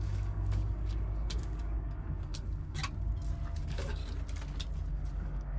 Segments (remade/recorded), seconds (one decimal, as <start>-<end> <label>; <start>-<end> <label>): 0.0-2.8 remade; 2.8-3.6 recorded; 3.6-4.0 remade; 4.0-4.9 recorded; 4.9-5.6 remade